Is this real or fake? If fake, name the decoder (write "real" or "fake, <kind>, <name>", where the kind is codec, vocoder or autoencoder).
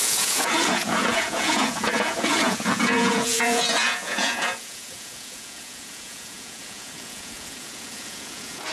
fake, vocoder, Vocos